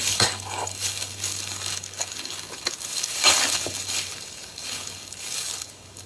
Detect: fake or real fake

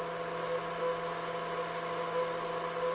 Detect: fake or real real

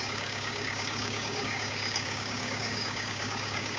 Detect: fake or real fake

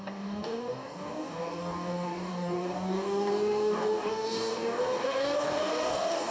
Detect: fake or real fake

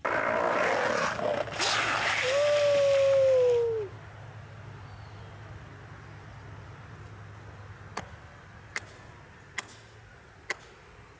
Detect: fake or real real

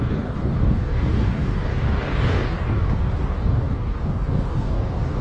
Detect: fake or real fake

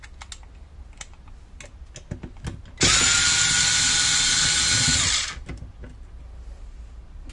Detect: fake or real real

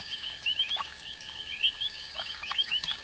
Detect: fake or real fake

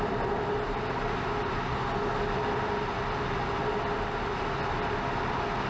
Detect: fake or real real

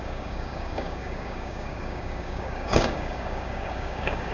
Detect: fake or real fake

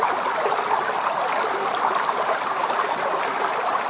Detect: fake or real real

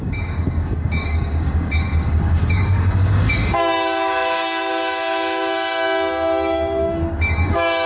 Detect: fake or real fake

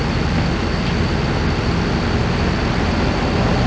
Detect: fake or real real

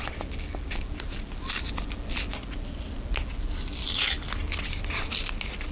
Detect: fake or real real